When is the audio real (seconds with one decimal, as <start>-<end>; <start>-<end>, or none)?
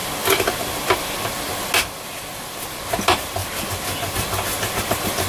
0.0-5.3